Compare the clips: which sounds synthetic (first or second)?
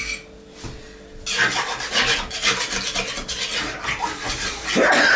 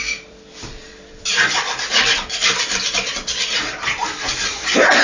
second